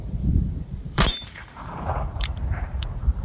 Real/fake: fake